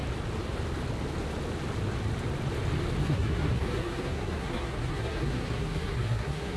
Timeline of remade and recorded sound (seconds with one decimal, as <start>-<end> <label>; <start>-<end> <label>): 0.0-3.0 recorded; 3.0-6.6 remade

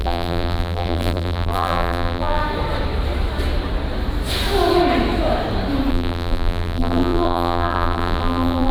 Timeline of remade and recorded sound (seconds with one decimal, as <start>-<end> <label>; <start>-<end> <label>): 0.0-2.4 remade; 2.4-5.9 recorded; 5.9-8.7 remade

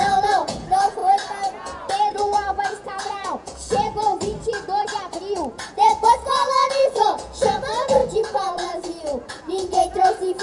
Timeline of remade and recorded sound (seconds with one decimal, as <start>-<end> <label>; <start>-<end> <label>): 0.0-1.0 remade; 1.0-2.1 recorded; 2.1-4.1 remade; 4.1-5.7 recorded; 5.7-10.4 remade

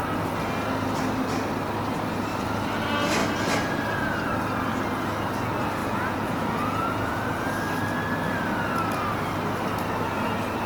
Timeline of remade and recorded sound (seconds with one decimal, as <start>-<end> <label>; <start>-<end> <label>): 0.0-5.8 recorded; 5.8-7.5 remade; 7.5-10.7 recorded

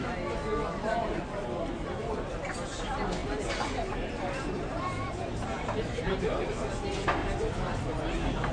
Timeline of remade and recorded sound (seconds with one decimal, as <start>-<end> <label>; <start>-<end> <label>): 0.0-3.2 recorded; 3.2-6.1 remade; 6.1-7.2 recorded; 7.2-8.5 remade